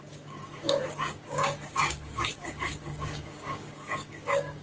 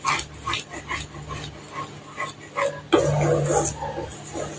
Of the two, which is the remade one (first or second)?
first